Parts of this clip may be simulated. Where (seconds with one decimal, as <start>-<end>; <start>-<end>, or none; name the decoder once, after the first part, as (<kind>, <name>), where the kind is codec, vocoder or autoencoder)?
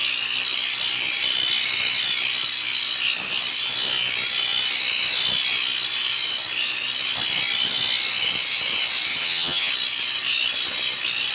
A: 9.1-9.7 (vocoder, HiFi-GAN)